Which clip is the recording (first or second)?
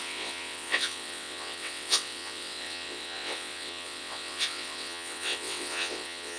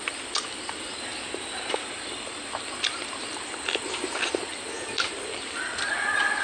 second